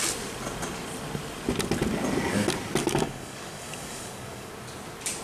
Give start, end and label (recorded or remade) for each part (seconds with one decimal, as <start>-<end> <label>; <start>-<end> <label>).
0.0-2.8 recorded; 2.8-4.5 remade; 4.5-5.2 recorded